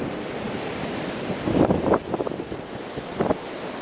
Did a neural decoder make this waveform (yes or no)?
no